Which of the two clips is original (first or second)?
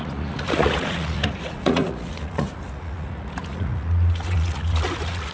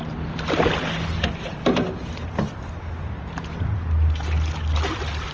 second